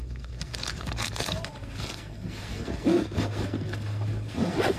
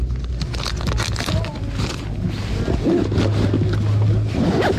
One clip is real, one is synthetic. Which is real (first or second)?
second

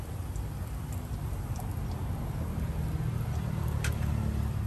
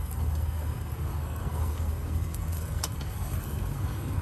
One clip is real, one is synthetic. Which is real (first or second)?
first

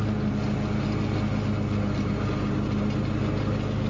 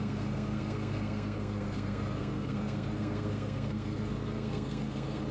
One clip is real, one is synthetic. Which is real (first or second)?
first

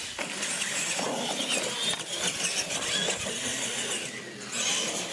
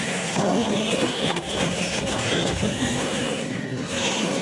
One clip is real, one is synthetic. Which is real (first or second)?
first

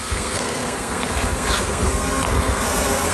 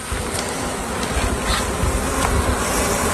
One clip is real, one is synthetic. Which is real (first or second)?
second